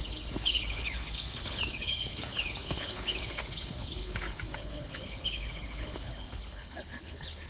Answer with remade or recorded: remade